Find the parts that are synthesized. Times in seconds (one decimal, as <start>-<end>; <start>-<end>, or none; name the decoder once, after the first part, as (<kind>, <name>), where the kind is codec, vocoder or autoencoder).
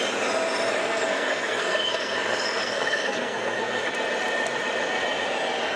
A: 0.8-3.9 (codec, SNAC)